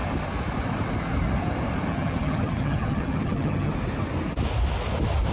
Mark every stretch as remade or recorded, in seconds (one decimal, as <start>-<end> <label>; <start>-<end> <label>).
0.0-1.9 recorded; 1.9-3.7 remade; 3.7-5.3 recorded